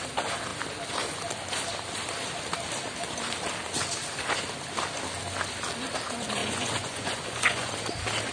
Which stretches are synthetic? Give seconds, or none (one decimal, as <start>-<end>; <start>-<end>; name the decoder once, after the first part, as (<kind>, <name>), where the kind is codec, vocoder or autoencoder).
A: 6.4-7.7 (vocoder, Vocos)